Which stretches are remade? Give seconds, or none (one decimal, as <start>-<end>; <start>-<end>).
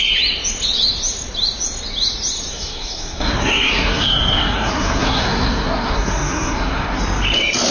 2.5-7.0